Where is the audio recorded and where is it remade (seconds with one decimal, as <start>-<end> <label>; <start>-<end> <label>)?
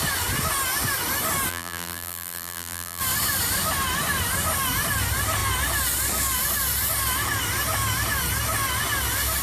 0.0-1.5 recorded; 1.5-3.0 remade; 3.0-9.4 recorded